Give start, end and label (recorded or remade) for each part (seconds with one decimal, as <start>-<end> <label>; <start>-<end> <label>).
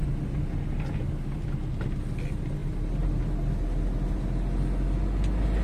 0.0-5.6 recorded